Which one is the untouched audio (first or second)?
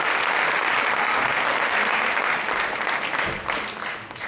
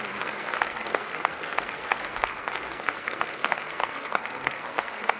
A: first